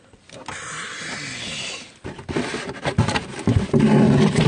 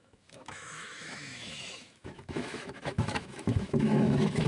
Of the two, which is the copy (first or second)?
second